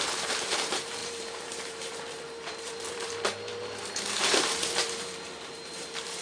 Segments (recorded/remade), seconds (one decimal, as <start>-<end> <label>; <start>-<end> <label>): 0.0-6.2 remade